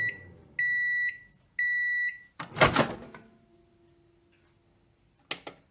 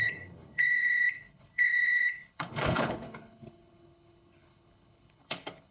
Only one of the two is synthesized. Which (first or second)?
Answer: second